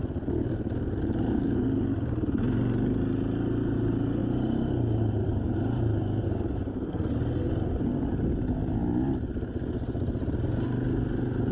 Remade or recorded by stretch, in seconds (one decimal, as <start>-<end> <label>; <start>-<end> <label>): 0.0-6.7 recorded; 6.7-7.5 remade; 7.5-11.5 recorded